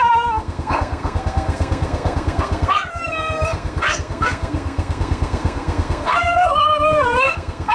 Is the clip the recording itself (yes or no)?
no